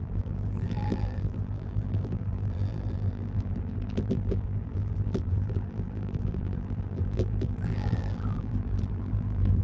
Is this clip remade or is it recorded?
remade